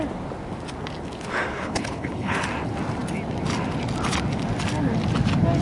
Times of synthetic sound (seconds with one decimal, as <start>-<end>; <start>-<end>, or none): 1.5-2.4